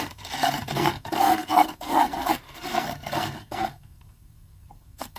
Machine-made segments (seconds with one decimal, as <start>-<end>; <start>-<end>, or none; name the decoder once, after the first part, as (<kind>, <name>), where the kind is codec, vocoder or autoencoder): 0.0-5.2 (codec, SNAC)